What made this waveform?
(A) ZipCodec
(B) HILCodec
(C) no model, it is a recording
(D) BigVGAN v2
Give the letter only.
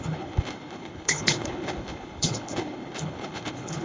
B